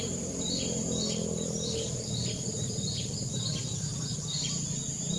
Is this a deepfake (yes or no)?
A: no